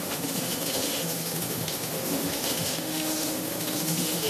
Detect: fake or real fake